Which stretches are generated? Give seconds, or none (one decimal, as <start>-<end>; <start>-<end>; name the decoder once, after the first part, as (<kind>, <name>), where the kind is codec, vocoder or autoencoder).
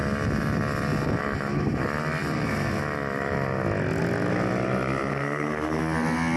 5.1-5.8 (codec, SNAC)